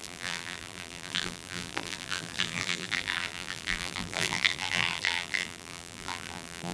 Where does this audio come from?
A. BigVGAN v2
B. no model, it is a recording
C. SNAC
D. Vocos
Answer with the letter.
A